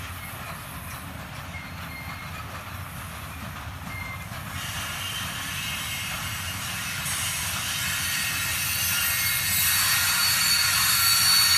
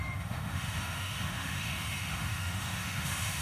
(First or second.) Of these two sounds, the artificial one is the second